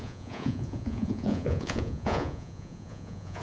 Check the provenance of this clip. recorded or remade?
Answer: remade